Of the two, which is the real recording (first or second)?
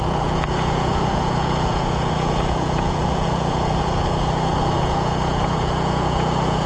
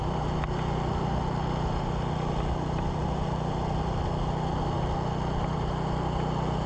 second